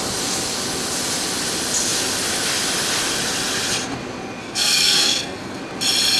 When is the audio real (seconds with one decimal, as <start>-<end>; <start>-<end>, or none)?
0.0-4.4; 5.6-6.2